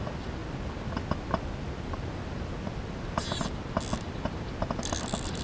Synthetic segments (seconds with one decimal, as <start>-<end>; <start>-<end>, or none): none